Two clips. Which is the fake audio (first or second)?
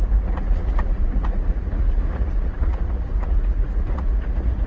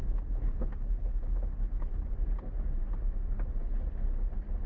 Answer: first